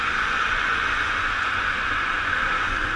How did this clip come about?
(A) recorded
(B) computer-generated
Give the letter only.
B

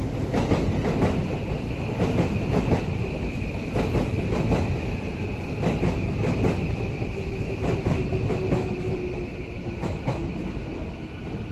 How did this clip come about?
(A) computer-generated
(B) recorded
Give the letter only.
B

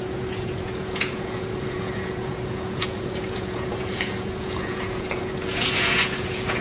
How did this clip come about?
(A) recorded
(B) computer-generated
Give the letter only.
B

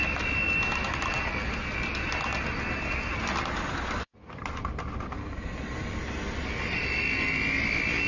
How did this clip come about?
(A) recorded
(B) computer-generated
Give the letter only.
A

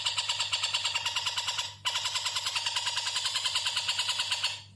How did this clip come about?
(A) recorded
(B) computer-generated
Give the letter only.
A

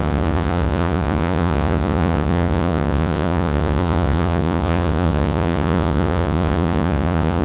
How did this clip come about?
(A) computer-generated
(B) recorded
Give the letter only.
A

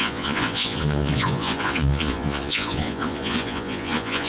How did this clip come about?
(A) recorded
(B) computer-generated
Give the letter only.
B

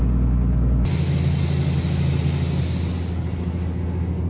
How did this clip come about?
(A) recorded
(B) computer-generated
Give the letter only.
A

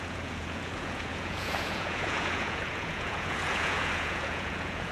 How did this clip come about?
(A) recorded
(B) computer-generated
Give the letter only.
B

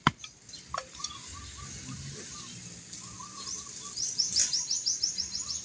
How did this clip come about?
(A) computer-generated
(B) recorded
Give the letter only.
B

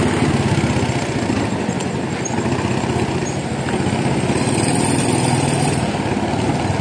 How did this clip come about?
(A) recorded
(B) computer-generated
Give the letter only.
A